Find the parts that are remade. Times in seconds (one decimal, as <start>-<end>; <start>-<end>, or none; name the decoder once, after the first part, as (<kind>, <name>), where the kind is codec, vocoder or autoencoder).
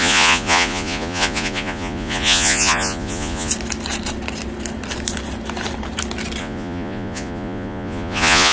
0.0-3.5 (vocoder, Vocos); 6.4-8.5